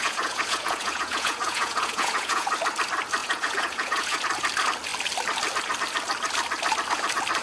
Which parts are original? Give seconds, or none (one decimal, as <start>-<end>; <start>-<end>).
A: 2.5-3.2; 4.2-7.4